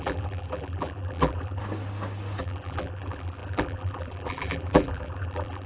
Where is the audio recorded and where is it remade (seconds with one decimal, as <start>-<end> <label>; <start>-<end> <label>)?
0.0-1.6 remade; 1.6-2.4 recorded; 2.4-5.7 remade